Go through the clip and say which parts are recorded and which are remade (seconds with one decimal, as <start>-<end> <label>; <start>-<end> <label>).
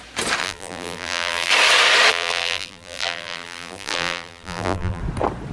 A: 0.0-0.4 recorded; 0.4-1.5 remade; 1.5-2.1 recorded; 2.1-5.0 remade; 5.0-5.5 recorded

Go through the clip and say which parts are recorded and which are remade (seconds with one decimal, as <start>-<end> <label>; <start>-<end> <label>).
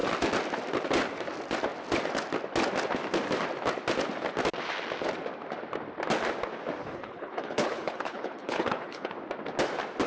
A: 0.0-6.8 recorded; 6.8-9.1 remade; 9.1-10.1 recorded